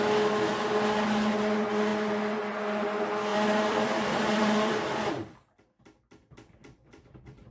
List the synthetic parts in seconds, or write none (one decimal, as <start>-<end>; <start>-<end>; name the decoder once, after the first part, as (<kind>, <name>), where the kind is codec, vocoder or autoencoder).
1.9-2.6 (vocoder, BigVGAN v2); 3.3-7.5